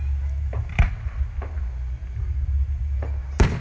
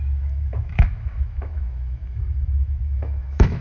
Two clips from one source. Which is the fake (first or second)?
second